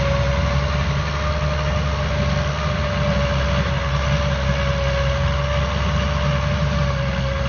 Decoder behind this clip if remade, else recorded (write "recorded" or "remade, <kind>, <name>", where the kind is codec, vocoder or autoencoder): recorded